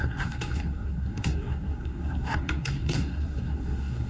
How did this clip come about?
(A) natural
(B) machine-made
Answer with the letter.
B